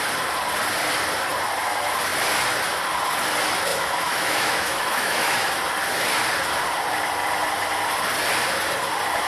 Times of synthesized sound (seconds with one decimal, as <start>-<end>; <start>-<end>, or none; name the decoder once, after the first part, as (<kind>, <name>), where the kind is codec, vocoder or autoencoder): 3.7-5.5 (autoencoder, DAC-VAE)